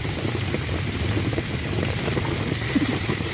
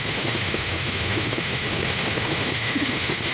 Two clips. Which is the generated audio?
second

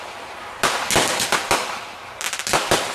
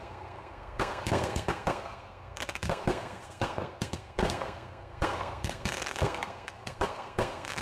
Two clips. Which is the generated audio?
second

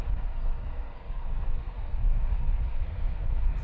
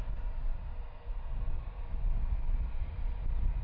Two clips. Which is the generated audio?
first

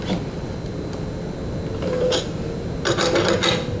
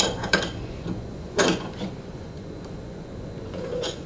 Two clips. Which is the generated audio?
second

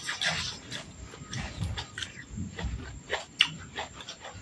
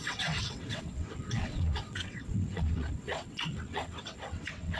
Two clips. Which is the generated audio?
second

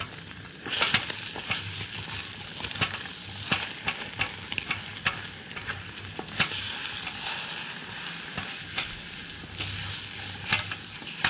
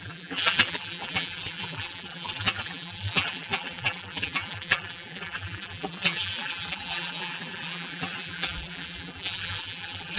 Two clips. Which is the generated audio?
second